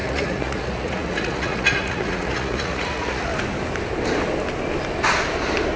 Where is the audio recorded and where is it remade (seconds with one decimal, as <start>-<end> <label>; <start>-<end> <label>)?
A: 0.0-3.3 remade; 3.3-5.8 recorded